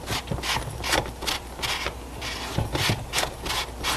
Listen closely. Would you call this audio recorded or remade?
recorded